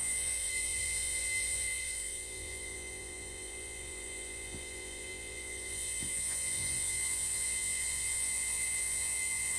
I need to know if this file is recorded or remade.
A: remade